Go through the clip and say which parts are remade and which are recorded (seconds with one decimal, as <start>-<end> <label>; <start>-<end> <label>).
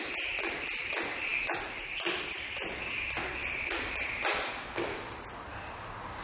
0.0-6.2 recorded